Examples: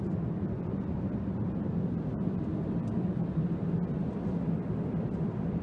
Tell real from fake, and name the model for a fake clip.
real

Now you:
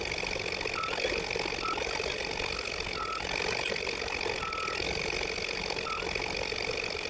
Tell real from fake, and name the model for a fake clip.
real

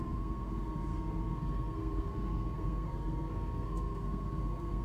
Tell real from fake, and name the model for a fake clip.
fake, codec, SNAC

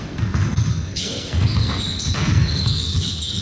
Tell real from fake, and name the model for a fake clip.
fake, codec, SNAC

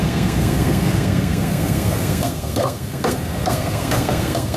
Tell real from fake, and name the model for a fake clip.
fake, codec, SNAC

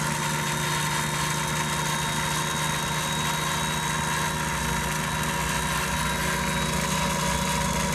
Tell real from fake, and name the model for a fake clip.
real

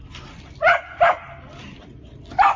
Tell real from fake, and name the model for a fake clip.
real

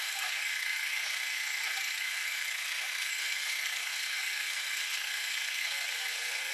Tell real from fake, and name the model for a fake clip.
fake, codec, SNAC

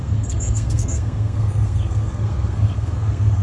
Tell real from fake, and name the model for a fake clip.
fake, codec, SNAC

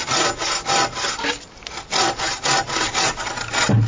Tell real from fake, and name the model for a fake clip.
real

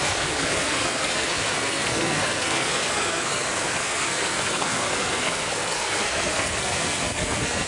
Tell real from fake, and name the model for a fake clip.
fake, codec, SNAC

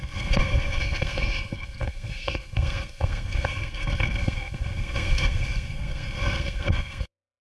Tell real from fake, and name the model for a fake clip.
fake, codec, SNAC